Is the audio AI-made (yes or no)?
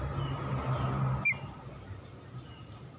no